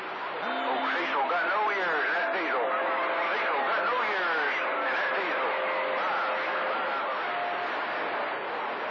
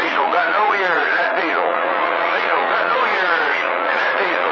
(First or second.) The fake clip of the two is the second